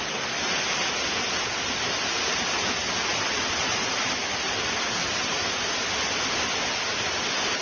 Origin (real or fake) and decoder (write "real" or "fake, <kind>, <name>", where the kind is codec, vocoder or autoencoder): real